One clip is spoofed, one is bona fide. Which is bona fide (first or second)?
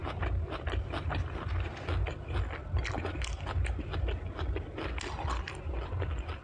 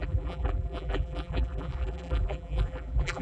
first